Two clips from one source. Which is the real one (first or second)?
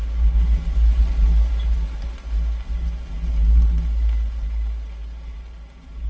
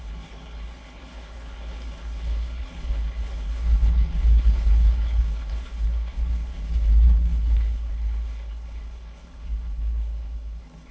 first